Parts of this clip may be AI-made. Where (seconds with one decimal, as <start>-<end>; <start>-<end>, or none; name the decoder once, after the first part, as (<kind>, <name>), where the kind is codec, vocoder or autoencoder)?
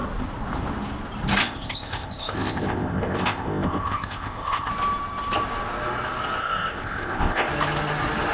1.4-4.7 (codec, ZipCodec); 6.4-7.5